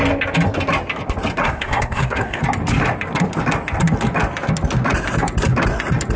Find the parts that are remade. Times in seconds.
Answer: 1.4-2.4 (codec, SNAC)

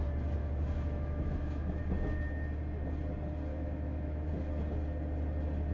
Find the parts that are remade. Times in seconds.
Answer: 0.4-1.8 (autoencoder, DAC-VAE); 3.5-4.3

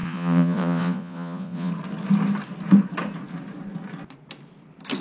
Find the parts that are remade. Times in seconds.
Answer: 0.0-1.7 (vocoder, Vocos)